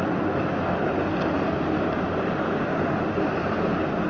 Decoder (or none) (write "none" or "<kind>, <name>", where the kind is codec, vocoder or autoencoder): none